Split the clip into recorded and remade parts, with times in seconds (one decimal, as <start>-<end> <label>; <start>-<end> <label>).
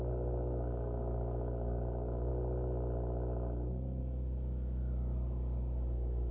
0.0-2.3 remade; 2.3-4.0 recorded; 4.0-6.3 remade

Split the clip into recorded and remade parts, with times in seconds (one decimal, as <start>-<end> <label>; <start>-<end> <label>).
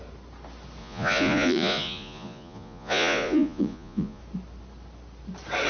0.0-0.8 recorded; 0.8-4.2 remade; 4.2-5.7 recorded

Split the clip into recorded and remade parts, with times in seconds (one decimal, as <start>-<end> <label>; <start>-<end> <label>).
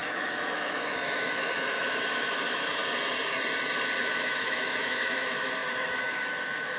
0.0-2.8 remade; 2.8-4.0 recorded; 4.0-6.8 remade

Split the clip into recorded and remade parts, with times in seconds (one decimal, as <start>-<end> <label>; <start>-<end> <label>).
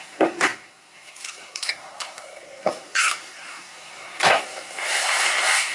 0.0-5.7 remade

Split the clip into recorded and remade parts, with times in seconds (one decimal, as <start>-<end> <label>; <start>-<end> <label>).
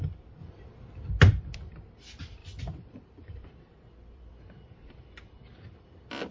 0.0-0.4 recorded; 0.4-1.1 remade; 1.1-2.4 recorded; 2.4-4.3 remade; 4.3-6.3 recorded